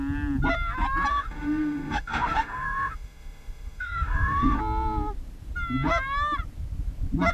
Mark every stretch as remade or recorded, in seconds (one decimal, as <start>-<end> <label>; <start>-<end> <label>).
0.0-1.1 recorded; 1.1-4.6 remade; 4.6-7.3 recorded